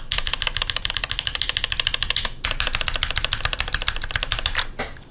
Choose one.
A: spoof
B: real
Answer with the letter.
B